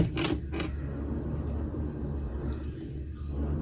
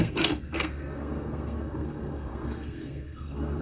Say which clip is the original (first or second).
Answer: first